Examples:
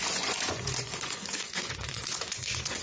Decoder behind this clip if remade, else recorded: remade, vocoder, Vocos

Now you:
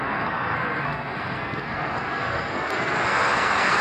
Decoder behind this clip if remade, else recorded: remade, codec, SNAC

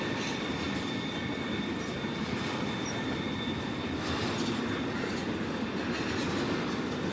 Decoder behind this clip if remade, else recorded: recorded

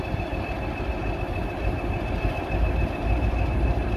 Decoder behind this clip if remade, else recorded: recorded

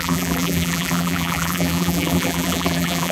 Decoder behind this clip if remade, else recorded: remade, vocoder, BigVGAN v2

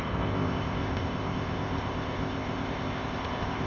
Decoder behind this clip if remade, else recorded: remade, codec, ZipCodec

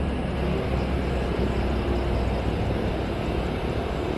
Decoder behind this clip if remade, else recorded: recorded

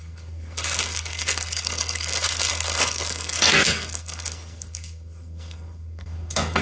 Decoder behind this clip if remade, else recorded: remade, codec, SNAC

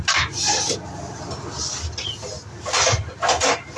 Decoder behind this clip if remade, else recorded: recorded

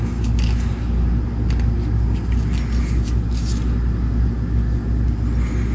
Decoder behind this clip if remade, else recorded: recorded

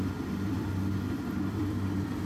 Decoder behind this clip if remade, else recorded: remade, vocoder, BigVGAN v2